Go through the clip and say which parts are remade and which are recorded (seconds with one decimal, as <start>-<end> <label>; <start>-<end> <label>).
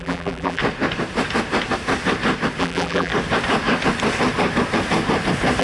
0.0-0.6 remade; 0.6-2.6 recorded; 2.6-3.1 remade; 3.1-5.6 recorded